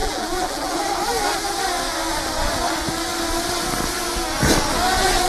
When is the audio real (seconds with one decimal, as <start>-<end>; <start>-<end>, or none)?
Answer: 0.8-5.3